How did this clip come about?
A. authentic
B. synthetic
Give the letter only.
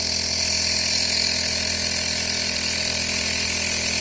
A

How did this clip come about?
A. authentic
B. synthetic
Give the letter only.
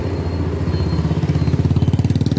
A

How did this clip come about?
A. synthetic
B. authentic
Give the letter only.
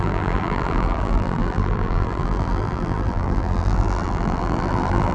A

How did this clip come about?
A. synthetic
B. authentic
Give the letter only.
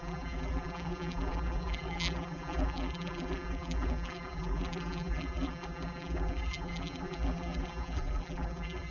A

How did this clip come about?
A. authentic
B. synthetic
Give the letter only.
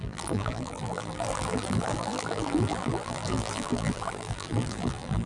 B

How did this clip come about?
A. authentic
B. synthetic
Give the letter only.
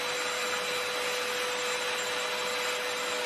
A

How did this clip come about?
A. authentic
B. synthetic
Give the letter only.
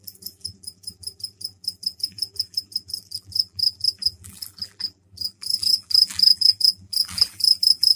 B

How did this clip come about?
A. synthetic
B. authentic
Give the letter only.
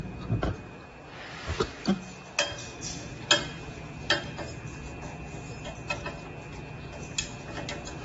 B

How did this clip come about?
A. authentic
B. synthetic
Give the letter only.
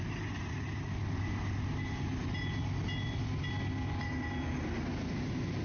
A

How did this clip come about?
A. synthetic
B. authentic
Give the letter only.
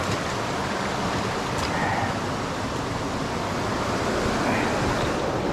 B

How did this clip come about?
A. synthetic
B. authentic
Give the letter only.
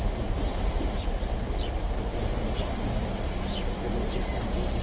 A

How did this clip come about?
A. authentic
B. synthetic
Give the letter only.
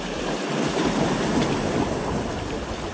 A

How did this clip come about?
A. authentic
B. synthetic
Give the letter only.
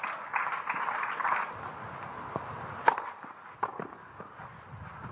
A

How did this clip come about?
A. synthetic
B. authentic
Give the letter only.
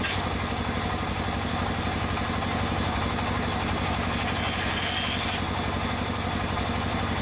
B